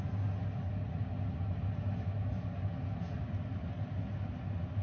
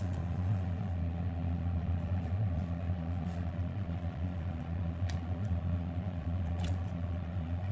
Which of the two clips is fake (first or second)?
second